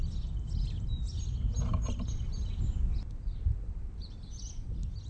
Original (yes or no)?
yes